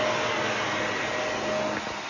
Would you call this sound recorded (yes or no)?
yes